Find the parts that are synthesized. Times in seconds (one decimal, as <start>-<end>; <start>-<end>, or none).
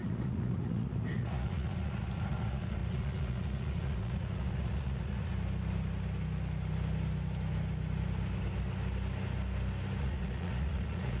0.0-5.3; 10.0-11.2